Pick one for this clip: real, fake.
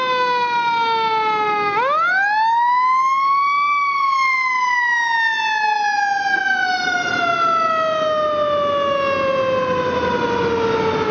real